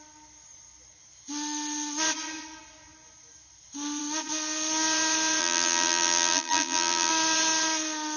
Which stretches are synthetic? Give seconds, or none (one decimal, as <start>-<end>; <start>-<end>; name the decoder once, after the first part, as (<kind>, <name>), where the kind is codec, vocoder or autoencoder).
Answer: 5.4-7.1 (vocoder, BigVGAN v2)